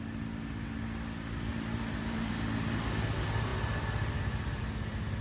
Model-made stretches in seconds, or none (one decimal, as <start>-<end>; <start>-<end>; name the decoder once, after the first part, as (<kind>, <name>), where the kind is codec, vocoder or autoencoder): 1.5-2.3 (vocoder, BigVGAN v2)